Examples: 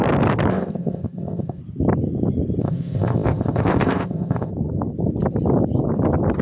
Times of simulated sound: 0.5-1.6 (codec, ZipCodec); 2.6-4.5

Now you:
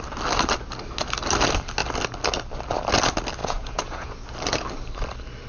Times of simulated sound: 3.4-4.1 (vocoder, Vocos)

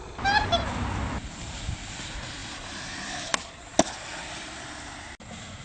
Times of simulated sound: none

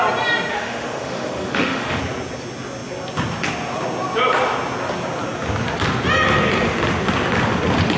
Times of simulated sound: 0.5-2.0 (autoencoder, DAC-VAE)